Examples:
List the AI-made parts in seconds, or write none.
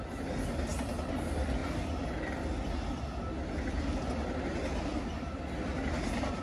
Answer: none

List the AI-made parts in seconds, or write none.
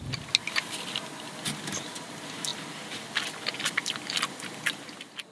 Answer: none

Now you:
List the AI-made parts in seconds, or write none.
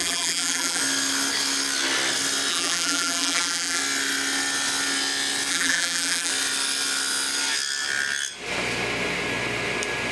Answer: 0.0-0.8 (vocoder, BigVGAN v2); 2.5-3.8; 5.5-6.3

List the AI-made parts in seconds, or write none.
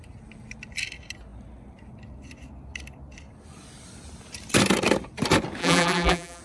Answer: 5.6-6.4 (vocoder, BigVGAN v2)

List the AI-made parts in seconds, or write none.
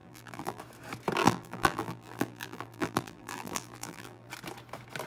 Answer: 0.0-0.6 (vocoder, BigVGAN v2); 1.2-4.3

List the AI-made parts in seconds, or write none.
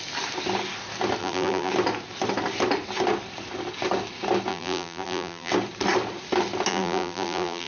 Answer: 1.2-1.7 (vocoder, BigVGAN v2); 4.5-5.5; 6.7-7.7